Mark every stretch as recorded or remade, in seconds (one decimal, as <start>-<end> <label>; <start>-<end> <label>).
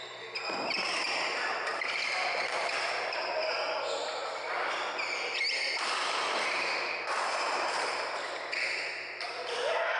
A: 0.0-10.0 recorded